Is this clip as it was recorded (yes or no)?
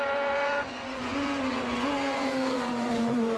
no